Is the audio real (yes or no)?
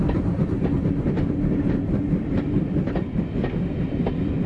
yes